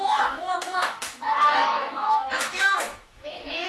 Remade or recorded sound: remade